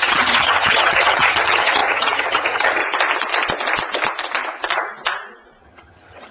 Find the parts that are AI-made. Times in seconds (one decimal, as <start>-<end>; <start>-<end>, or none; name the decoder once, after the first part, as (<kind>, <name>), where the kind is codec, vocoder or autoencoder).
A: 0.0-2.8 (vocoder, HiFi-GAN); 5.6-6.3